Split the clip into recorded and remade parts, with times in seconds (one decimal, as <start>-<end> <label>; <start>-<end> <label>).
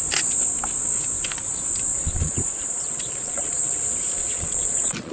0.0-1.9 recorded; 1.9-3.7 remade; 3.7-4.2 recorded; 4.2-5.1 remade